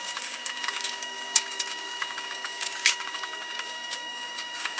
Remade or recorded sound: remade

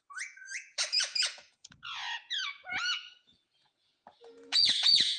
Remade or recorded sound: remade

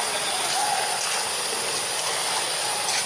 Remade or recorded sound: recorded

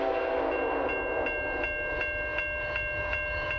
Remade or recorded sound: recorded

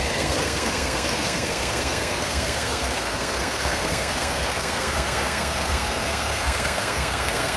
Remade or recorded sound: remade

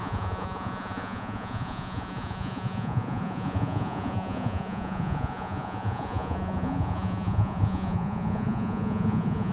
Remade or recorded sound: remade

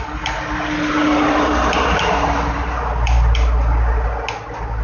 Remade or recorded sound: recorded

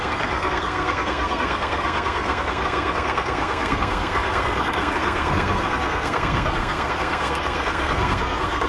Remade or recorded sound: remade